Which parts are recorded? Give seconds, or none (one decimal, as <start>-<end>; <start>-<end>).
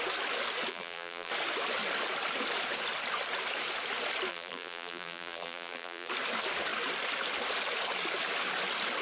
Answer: 0.0-0.7; 1.3-4.3; 6.1-9.0